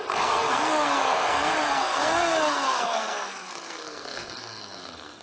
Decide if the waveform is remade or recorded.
remade